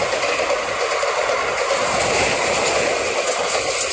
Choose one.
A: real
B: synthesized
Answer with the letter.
A